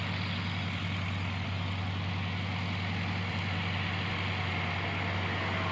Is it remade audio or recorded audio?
recorded